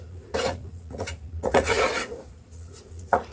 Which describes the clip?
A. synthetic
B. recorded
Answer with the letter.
A